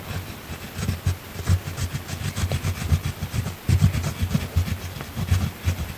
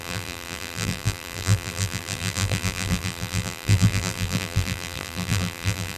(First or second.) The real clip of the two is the first